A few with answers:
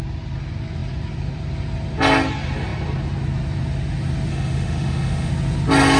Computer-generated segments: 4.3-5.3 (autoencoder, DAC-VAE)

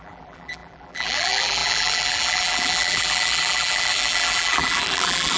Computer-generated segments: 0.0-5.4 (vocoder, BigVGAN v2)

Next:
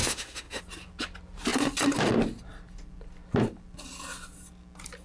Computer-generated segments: 0.0-0.6 (autoencoder, DAC-VAE)